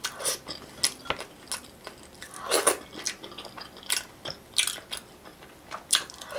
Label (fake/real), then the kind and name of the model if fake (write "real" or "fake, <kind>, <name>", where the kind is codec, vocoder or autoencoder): real